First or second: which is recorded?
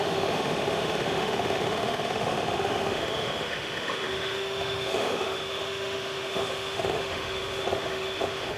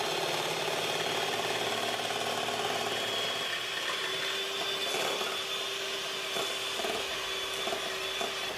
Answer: second